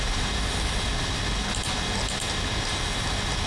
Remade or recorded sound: recorded